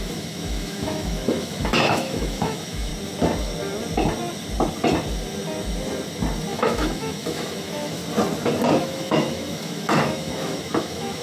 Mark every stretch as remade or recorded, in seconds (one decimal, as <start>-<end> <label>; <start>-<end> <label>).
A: 0.0-2.9 remade; 2.9-6.5 recorded; 6.5-8.0 remade; 8.0-8.8 recorded; 8.8-11.2 remade